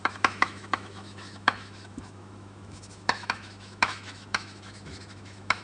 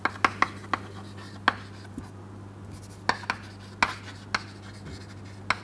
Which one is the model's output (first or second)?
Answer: first